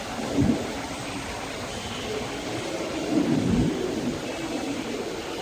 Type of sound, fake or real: real